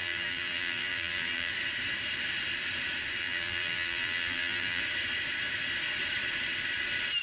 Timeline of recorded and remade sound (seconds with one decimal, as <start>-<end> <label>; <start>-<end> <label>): 0.0-1.5 remade; 1.5-3.2 recorded; 3.2-4.8 remade; 4.8-7.2 recorded